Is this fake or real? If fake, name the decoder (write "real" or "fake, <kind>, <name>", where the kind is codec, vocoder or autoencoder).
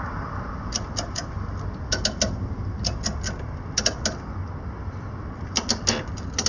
real